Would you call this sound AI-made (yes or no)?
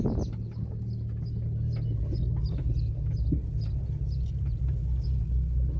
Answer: no